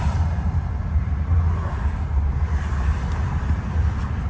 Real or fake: real